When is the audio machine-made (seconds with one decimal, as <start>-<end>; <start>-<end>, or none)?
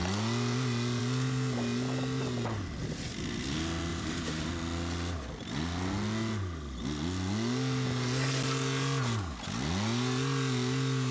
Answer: 3.9-4.5